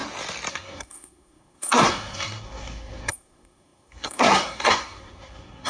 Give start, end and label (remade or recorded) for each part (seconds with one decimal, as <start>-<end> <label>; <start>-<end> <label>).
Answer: 0.0-0.5 recorded; 0.5-5.7 remade